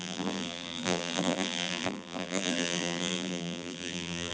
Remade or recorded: remade